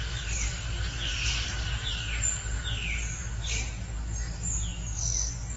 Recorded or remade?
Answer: recorded